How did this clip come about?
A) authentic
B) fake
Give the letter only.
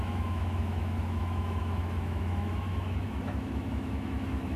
B